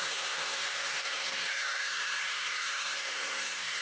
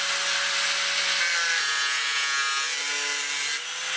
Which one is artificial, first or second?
first